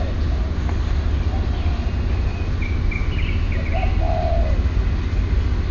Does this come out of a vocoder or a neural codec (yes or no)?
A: no